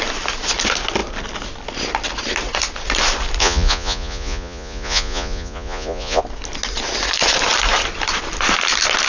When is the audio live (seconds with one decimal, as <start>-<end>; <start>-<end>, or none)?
0.0-3.4; 6.2-9.1